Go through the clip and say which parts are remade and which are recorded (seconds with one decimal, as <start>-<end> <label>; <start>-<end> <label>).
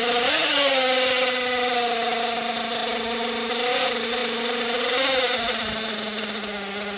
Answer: 0.0-7.0 recorded